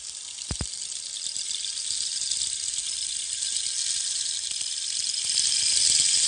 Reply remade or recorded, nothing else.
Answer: recorded